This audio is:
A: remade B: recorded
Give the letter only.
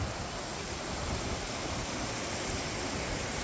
B